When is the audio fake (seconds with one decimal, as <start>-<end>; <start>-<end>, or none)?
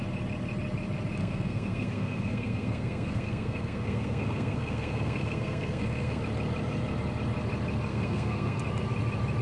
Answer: 1.2-6.2; 7.9-8.6